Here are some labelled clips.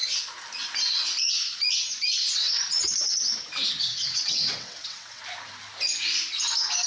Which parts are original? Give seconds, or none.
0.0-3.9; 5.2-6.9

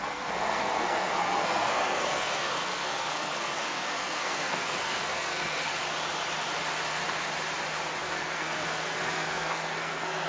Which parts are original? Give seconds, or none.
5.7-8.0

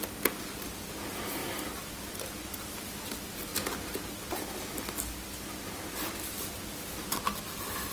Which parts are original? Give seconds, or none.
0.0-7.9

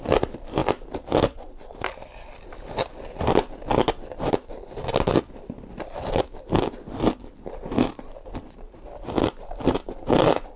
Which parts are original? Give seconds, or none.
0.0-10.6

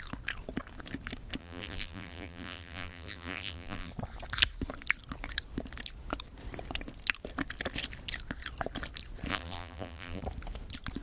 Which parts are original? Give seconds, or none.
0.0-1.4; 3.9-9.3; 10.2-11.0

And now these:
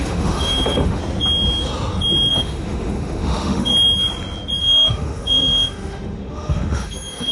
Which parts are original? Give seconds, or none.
1.0-2.3; 3.7-4.6

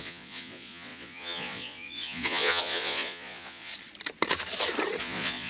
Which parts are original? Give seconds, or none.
3.7-5.0